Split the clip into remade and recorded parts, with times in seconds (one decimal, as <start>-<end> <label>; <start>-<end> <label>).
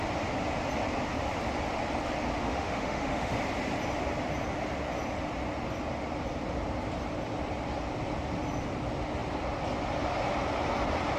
0.0-2.4 recorded; 2.4-3.4 remade; 3.4-11.2 recorded